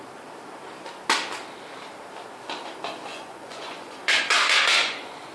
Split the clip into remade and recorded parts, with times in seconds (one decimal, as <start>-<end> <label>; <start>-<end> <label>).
0.0-3.1 recorded; 3.1-5.3 remade